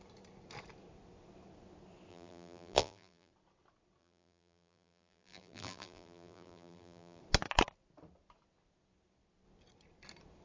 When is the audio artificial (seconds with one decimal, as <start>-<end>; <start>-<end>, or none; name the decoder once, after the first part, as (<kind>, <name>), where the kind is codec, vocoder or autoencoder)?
2.1-3.3 (vocoder, BigVGAN v2); 4.0-7.2